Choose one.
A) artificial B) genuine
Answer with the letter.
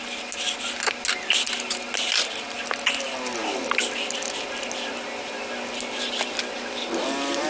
B